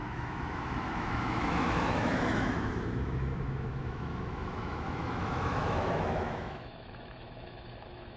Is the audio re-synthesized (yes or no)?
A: yes